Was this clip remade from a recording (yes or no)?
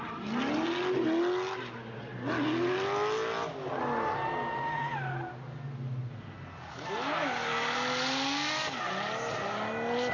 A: no